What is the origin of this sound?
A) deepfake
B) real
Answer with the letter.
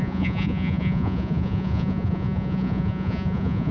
A